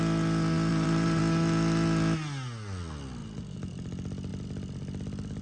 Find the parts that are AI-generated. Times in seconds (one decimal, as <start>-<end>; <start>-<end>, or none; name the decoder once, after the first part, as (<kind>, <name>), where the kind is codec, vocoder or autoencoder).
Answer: 0.7-1.2 (vocoder, BigVGAN v2); 3.2-3.7